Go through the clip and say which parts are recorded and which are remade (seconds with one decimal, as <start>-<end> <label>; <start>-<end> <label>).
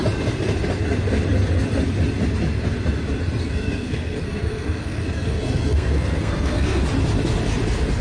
0.0-3.4 recorded; 3.4-6.8 remade; 6.8-8.0 recorded